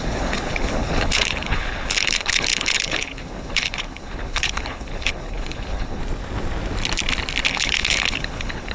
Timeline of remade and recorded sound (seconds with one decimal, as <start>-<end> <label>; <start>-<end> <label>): 0.0-6.0 remade; 6.0-7.5 recorded; 7.5-8.7 remade